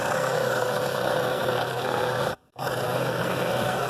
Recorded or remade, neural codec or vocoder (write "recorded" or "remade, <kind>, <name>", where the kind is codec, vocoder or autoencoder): remade, codec, SNAC